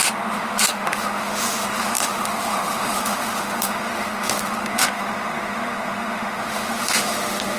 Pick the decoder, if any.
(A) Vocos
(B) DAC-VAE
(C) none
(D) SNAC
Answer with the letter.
B